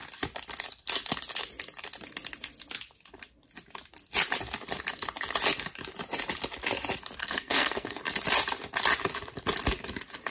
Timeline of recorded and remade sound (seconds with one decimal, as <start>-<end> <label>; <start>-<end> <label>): 0.0-7.2 recorded; 7.2-8.0 remade; 8.0-10.3 recorded